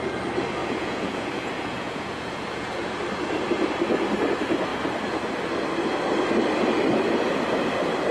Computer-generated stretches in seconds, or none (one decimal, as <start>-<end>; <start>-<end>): 0.6-2.7